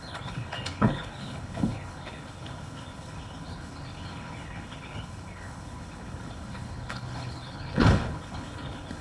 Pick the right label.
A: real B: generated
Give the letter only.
B